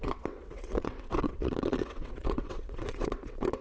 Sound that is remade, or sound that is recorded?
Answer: remade